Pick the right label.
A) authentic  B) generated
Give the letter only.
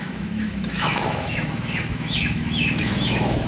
B